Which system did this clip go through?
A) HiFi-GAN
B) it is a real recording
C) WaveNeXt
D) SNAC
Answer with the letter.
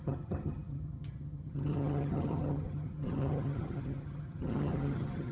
A